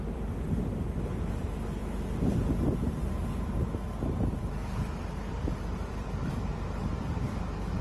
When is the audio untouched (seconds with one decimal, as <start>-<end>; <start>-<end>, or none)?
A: 1.8-4.1; 6.5-7.0

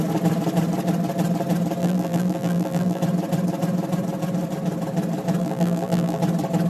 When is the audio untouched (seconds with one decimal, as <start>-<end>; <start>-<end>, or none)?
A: 0.0-1.8; 3.0-5.4; 6.2-6.7

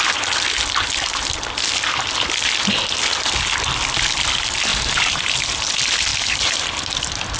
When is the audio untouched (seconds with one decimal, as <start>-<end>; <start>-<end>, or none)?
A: 0.0-4.7; 5.6-6.1; 6.8-7.4

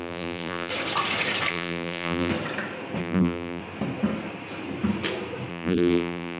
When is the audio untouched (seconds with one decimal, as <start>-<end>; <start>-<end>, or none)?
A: 0.7-1.5; 2.3-3.0; 3.6-5.5

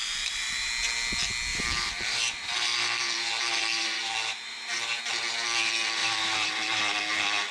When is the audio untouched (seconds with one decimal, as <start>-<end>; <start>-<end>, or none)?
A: 0.7-1.5; 5.0-6.0; 6.8-7.5

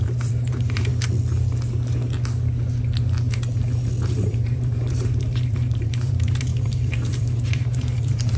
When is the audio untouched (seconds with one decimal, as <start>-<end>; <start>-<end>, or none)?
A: 0.9-4.2